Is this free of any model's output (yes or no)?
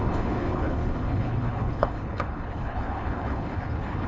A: no